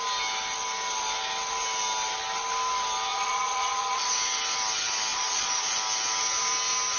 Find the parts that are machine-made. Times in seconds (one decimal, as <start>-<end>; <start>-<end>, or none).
3.1-4.1; 5.1-5.7

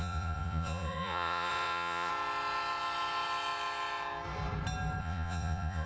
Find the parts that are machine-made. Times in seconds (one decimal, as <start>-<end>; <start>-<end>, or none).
0.0-2.1; 5.0-5.9